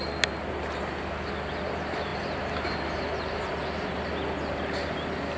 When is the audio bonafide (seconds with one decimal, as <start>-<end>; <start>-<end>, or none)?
0.0-5.4